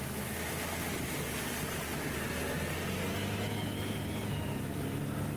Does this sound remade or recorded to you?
recorded